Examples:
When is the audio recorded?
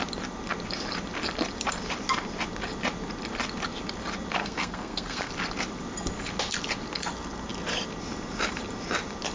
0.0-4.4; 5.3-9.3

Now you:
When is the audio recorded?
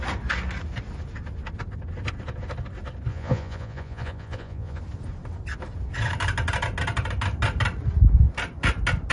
0.0-3.1; 4.8-9.1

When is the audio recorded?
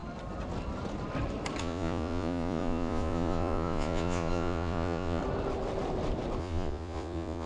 0.0-1.6; 5.2-6.4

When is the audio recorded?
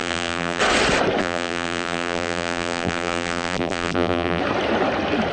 0.6-1.2; 4.4-5.3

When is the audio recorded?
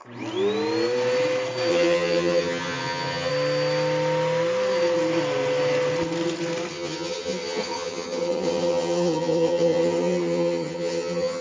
0.0-1.7; 3.3-6.7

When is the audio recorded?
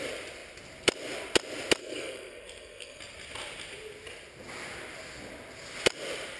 0.0-1.8; 3.0-6.4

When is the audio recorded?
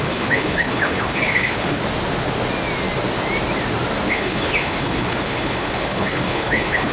1.8-4.1